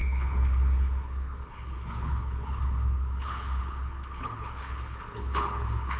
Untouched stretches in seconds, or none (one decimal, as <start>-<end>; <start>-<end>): none